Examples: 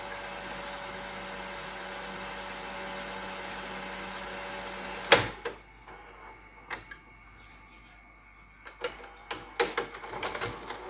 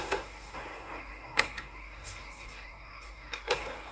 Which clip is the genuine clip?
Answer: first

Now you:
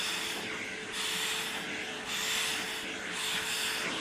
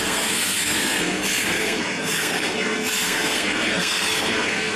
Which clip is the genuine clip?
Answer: first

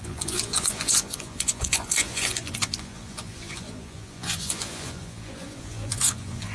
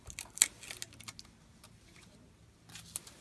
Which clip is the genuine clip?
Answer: second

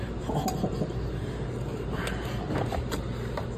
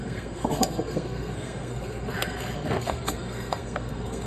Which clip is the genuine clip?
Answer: first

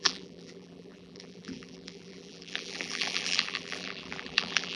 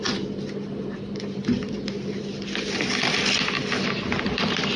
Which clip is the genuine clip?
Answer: second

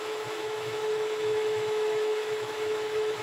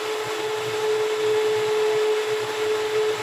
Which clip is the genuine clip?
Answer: second